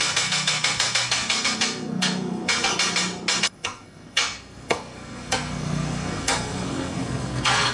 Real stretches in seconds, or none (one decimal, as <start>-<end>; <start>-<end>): 2.7-3.4

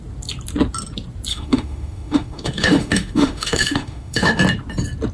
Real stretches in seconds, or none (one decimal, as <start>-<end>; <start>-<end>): 0.0-1.3; 4.4-5.1

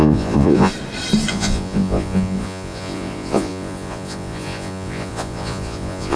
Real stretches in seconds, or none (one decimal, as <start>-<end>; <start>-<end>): 0.7-1.3